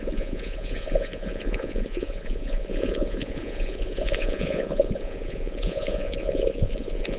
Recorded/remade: remade